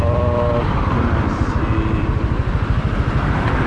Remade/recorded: remade